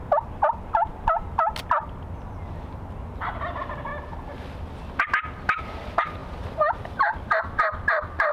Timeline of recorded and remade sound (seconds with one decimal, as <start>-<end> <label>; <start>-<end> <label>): 0.0-8.3 recorded